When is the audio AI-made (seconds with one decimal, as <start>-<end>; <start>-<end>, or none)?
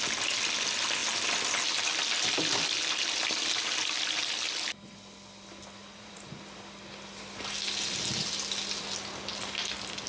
5.8-6.4